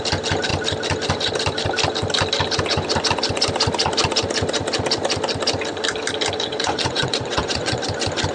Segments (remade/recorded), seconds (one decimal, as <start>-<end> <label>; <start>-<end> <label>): 0.0-6.5 recorded; 6.5-7.8 remade; 7.8-8.3 recorded